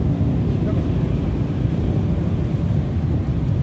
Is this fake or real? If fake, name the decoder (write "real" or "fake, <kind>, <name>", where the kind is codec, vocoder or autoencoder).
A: real